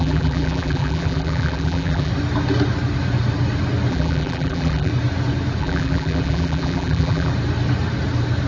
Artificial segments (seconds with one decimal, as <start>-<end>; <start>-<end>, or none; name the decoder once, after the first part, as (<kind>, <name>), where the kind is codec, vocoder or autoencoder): 0.0-2.1 (vocoder, BigVGAN v2); 3.9-4.9; 5.6-7.3